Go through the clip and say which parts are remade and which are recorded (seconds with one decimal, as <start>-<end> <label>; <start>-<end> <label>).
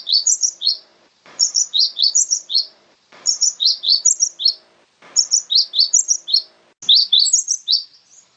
0.0-3.9 remade; 3.9-7.7 recorded; 7.7-8.4 remade